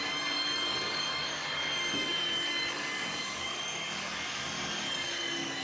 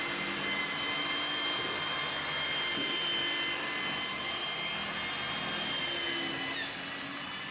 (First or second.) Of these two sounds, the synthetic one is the first